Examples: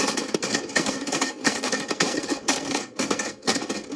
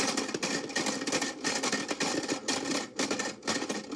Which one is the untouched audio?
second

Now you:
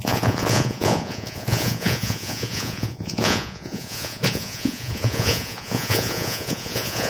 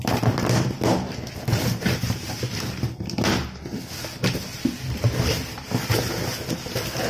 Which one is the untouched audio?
second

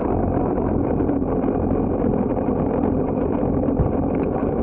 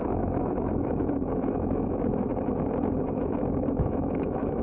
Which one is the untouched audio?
first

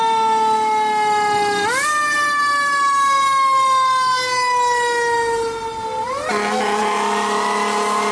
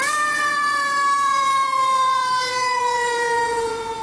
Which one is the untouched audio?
first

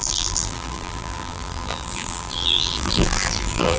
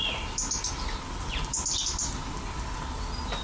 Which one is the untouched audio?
second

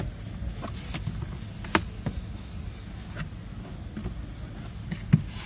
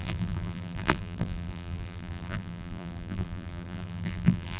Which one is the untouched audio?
first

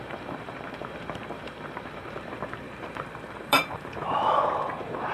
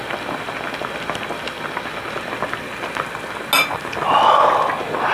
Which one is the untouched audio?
second